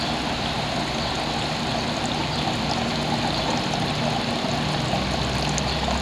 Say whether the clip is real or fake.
real